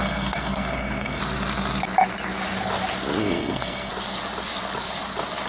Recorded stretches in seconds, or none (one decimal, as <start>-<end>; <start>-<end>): 1.2-3.2; 3.9-5.5